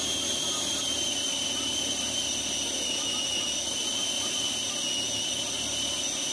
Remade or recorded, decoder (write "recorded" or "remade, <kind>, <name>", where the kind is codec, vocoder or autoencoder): recorded